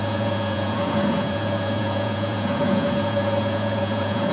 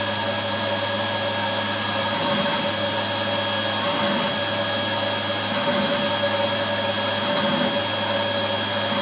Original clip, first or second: second